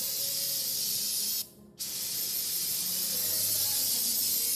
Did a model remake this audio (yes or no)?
no